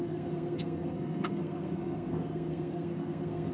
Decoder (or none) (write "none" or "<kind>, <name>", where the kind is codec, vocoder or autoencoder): codec, SNAC